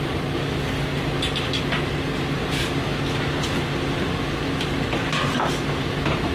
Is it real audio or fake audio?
real